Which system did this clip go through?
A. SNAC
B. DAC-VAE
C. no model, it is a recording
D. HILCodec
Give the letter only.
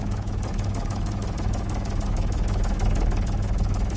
B